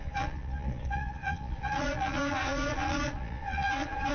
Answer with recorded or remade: remade